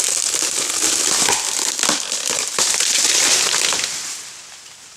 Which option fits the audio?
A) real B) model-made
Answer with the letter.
A